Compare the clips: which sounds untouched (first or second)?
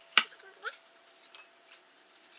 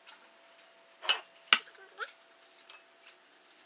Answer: second